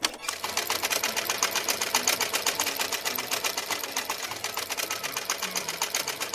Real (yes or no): yes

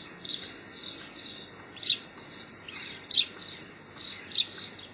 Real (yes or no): yes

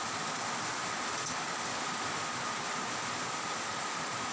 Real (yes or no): yes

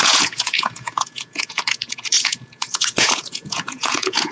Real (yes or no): no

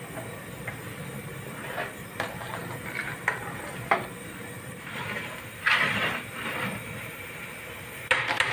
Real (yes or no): yes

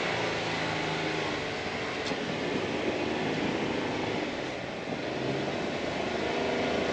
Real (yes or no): yes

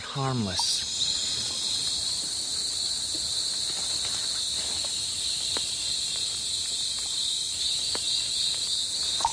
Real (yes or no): yes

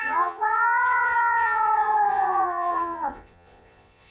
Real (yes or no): no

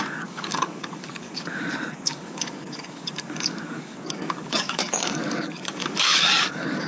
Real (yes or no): no